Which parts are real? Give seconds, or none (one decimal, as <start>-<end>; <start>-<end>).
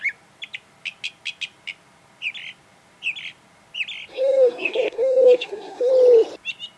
0.0-4.1; 5.9-6.8